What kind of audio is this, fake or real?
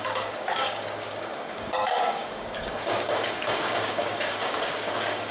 fake